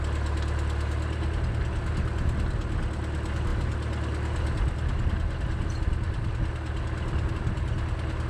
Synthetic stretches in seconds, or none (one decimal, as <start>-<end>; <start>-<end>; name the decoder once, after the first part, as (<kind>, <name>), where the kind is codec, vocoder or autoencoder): none